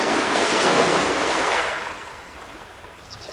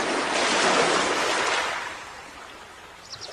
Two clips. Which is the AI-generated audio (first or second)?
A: first